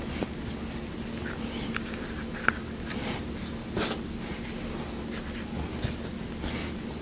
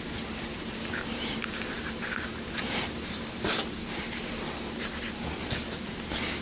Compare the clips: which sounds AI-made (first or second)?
second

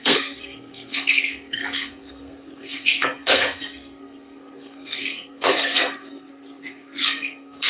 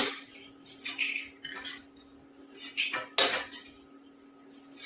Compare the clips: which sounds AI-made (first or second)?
first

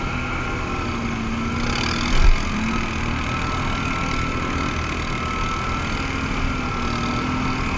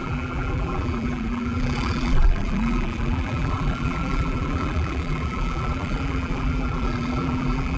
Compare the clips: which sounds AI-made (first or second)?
second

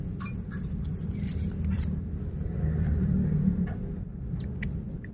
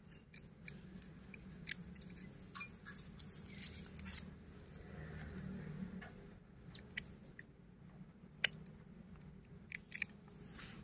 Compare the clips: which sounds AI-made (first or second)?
first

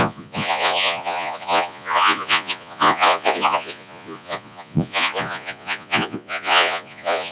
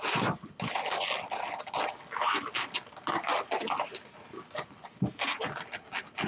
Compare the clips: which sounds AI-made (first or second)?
first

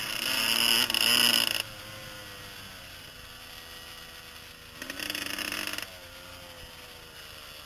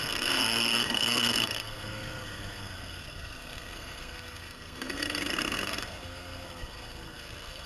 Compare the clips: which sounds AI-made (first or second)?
second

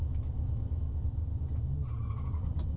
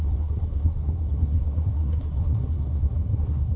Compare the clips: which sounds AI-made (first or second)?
second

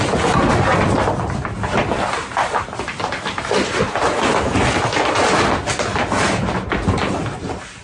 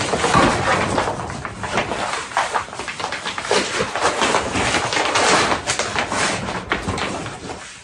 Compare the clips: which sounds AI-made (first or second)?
second